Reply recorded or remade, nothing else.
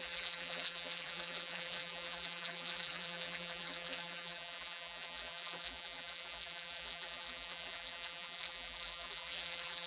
remade